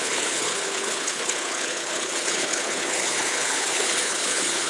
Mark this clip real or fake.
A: fake